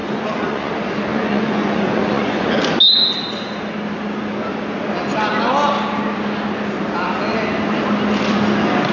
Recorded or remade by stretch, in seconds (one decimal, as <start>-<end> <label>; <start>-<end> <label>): 0.0-0.7 remade; 0.7-1.1 recorded; 1.1-2.5 remade; 2.5-8.9 recorded